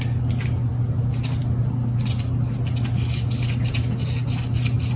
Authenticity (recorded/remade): recorded